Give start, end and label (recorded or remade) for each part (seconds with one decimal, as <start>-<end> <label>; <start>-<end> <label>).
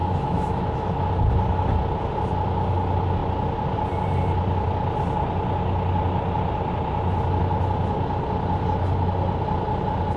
0.0-1.1 remade; 1.1-10.2 recorded